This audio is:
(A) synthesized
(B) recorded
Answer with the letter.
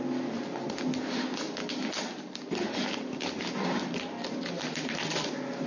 B